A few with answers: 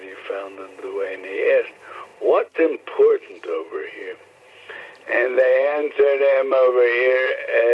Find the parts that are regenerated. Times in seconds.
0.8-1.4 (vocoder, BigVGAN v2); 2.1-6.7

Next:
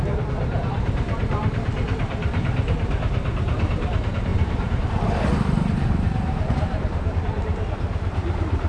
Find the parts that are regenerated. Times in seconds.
0.0-8.7 (vocoder, BigVGAN v2)

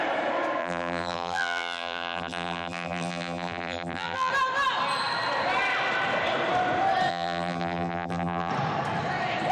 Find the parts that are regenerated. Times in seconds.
0.6-4.3 (vocoder, BigVGAN v2); 7.1-8.5

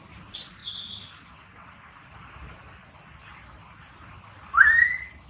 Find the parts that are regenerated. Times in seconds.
0.6-2.2 (vocoder, BigVGAN v2)

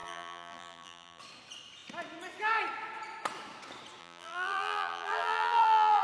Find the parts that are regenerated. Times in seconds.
0.0-1.2 (vocoder, BigVGAN v2); 4.0-6.0

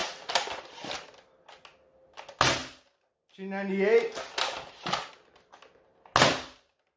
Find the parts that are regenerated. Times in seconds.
0.0-0.9 (vocoder, BigVGAN v2)

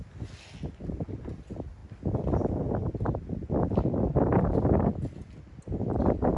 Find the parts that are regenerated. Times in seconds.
none

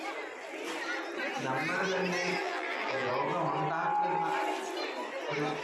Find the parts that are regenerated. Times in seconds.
2.4-3.1 (vocoder, BigVGAN v2)